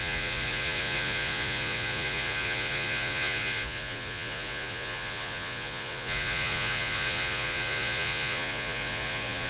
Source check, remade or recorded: remade